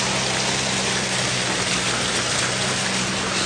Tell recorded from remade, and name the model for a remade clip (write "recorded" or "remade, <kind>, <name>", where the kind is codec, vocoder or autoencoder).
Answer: recorded